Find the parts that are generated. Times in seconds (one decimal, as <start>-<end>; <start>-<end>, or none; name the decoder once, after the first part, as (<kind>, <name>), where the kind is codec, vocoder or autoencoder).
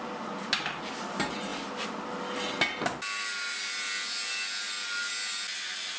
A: none